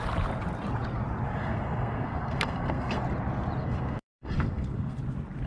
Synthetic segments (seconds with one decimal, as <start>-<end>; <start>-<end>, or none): 1.4-3.0; 3.6-5.0